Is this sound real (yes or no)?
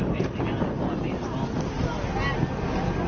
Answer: yes